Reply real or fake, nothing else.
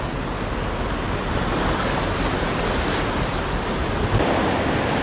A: real